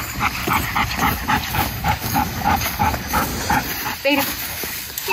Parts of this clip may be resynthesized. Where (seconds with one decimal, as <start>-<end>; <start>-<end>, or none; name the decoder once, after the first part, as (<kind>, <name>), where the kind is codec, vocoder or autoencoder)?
0.0-0.4 (codec, DAC); 1.5-3.3; 4.2-5.1